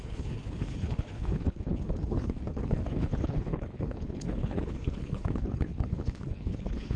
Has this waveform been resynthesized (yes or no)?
yes